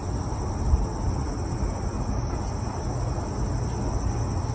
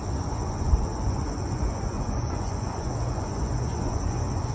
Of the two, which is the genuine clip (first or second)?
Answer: first